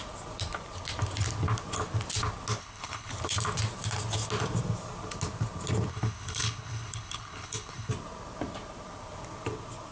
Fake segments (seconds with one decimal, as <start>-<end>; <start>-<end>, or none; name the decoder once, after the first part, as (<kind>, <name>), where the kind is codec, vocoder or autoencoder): 2.6-3.1 (codec, HILCodec); 5.9-7.9